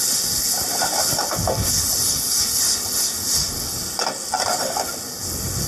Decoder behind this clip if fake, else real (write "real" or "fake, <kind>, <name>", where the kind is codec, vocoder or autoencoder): real